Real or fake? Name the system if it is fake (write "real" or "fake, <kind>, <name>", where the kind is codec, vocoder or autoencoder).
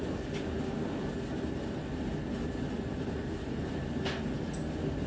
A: real